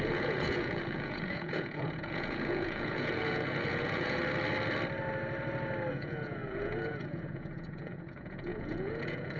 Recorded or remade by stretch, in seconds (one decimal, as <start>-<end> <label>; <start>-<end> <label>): 0.0-4.2 remade; 4.2-5.9 recorded; 5.9-9.4 remade